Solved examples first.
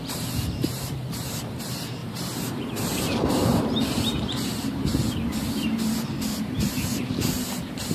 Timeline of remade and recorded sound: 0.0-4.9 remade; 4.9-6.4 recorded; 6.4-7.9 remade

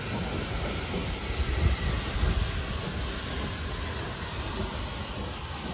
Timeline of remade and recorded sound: 0.0-5.7 recorded